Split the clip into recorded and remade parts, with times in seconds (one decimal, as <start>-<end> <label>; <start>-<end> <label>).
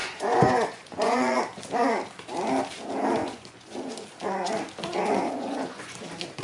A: 0.0-1.4 remade; 1.4-3.2 recorded; 3.2-3.9 remade; 3.9-5.1 recorded; 5.1-6.0 remade; 6.0-6.4 recorded